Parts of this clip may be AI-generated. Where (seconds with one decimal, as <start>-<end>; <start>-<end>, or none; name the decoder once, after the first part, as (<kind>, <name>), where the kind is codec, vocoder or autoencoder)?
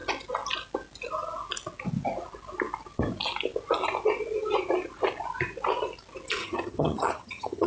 6.4-7.7 (vocoder, HiFi-GAN)